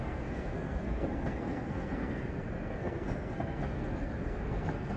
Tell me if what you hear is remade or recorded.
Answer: remade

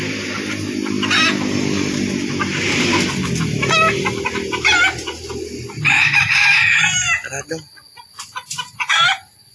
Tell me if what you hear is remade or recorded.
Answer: recorded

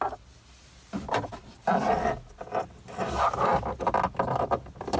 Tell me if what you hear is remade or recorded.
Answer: recorded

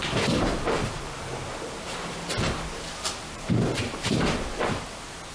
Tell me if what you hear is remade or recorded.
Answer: remade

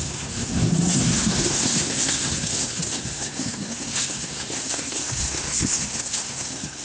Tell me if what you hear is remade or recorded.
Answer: remade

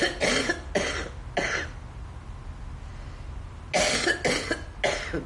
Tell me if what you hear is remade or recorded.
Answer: recorded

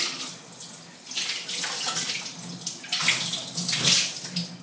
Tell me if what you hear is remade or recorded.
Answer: recorded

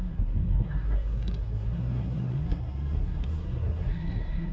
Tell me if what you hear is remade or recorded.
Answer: remade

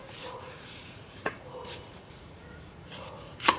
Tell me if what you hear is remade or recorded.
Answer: remade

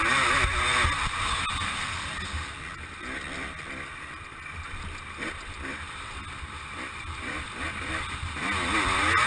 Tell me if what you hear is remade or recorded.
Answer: recorded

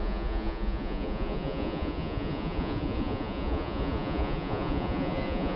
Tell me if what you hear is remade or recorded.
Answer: remade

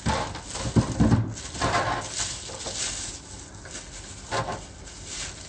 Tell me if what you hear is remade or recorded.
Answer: recorded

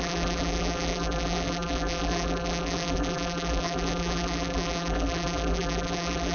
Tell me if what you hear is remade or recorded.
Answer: remade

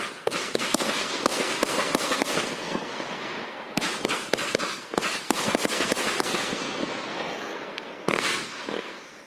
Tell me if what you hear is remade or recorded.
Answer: remade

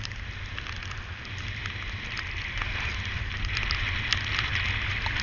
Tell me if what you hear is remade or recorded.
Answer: recorded